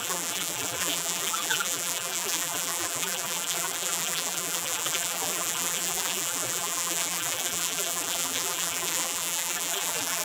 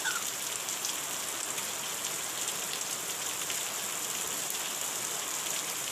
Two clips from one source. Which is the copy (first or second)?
first